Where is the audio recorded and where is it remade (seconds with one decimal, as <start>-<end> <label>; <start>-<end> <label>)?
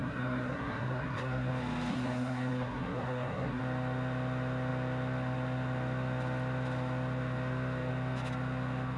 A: 0.0-1.5 remade; 1.5-1.9 recorded; 1.9-3.6 remade; 3.6-9.0 recorded